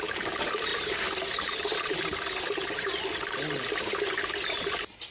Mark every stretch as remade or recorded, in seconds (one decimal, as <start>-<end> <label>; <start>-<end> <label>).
0.0-5.1 recorded